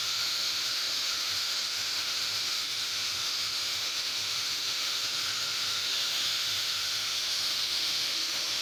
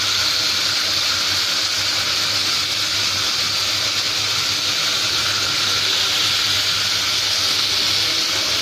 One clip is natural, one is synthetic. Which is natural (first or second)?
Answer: second